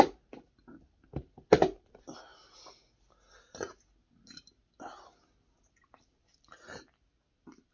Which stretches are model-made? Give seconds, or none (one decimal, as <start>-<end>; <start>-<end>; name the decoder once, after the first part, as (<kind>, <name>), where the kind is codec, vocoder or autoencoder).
none